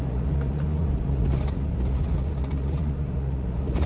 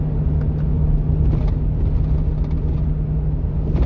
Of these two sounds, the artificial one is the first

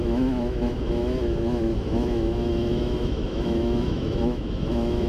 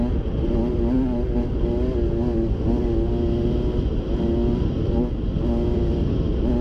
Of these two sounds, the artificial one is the first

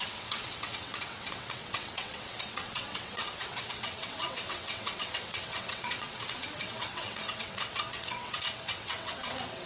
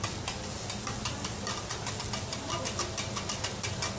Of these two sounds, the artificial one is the first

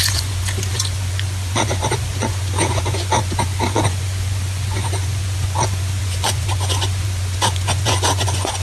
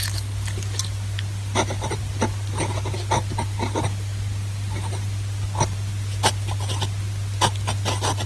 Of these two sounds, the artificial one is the first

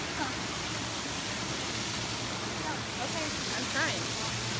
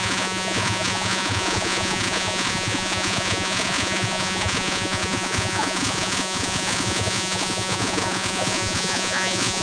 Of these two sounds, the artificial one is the second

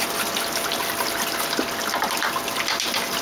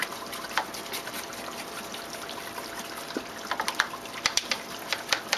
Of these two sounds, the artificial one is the second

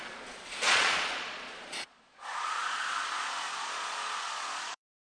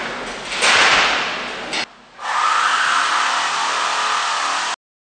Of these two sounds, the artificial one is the first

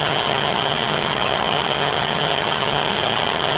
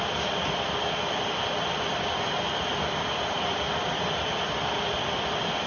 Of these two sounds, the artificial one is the first